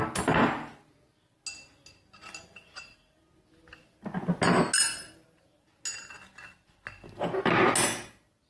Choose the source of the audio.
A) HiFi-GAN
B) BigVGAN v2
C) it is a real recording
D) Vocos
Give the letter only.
C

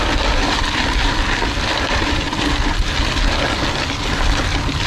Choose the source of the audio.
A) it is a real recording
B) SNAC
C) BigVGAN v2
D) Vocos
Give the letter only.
A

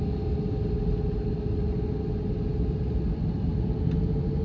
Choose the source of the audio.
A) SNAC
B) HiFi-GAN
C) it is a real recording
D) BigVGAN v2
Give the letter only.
C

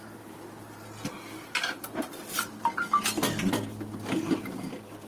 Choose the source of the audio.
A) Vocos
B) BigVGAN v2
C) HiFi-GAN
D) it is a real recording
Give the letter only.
D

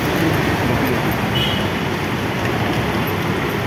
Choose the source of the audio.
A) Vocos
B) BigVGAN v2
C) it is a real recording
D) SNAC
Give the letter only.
C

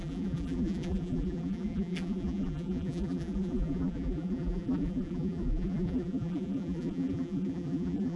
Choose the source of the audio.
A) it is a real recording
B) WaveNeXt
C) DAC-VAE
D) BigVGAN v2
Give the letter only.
D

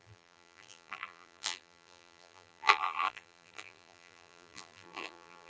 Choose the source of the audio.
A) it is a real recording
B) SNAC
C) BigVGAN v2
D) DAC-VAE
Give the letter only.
C